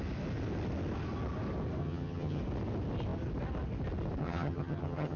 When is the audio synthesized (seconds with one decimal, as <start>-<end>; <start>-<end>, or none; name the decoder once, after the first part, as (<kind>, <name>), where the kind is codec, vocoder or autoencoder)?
1.8-2.4 (vocoder, HiFi-GAN); 4.2-5.2